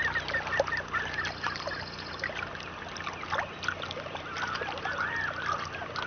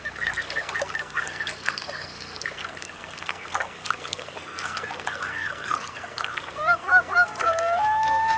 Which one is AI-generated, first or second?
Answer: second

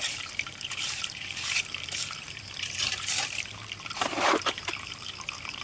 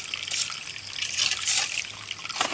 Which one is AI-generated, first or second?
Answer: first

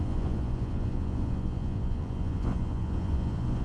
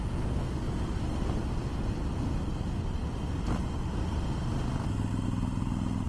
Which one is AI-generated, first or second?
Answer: first